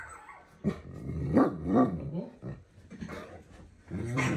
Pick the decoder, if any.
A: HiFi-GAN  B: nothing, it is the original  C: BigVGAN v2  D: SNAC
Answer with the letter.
C